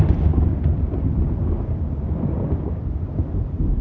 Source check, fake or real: real